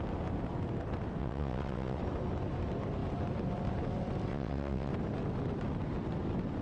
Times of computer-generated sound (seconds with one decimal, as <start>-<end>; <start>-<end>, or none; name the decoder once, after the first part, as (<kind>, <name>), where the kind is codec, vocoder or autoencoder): 1.2-2.0 (vocoder, WaveNeXt); 4.3-4.9